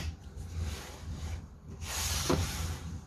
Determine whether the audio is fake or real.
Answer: fake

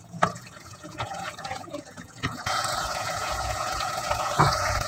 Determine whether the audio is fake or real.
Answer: fake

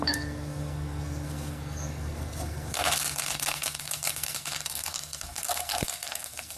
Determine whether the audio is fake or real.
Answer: fake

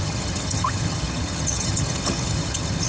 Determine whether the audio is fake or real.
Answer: fake